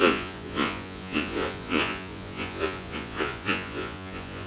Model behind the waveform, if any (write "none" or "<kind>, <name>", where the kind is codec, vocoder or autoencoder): vocoder, Vocos